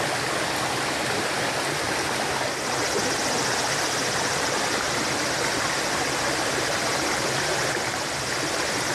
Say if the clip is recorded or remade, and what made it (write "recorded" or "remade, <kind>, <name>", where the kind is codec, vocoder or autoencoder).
recorded